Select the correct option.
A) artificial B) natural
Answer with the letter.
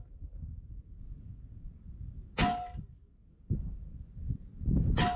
B